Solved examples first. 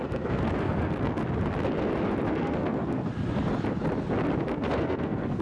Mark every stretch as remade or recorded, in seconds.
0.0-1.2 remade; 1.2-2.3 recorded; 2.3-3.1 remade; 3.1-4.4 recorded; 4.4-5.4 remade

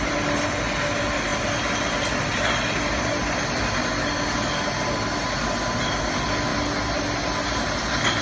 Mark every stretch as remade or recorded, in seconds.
0.0-8.2 recorded

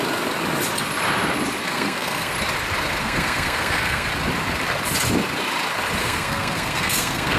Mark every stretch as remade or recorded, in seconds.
0.0-1.7 recorded; 1.7-2.3 remade; 2.3-3.0 recorded; 3.0-4.1 remade; 4.1-6.0 recorded; 6.0-7.4 remade

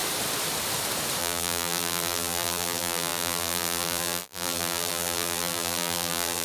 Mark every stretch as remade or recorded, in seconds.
0.0-1.2 recorded; 1.2-6.4 remade

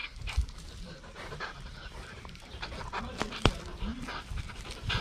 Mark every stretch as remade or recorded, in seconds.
0.0-3.0 remade; 3.0-5.0 recorded